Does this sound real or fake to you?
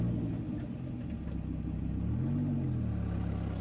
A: real